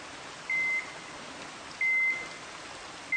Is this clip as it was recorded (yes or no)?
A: yes